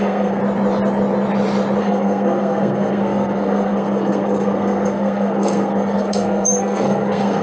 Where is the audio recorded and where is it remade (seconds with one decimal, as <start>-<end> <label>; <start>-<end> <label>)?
0.0-0.4 remade; 0.4-1.8 recorded; 1.8-7.4 remade